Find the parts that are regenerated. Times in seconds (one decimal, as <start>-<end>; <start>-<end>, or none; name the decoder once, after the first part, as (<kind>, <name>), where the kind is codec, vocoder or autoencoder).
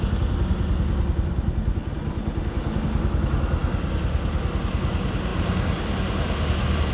none